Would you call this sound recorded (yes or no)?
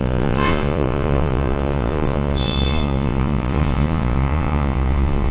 no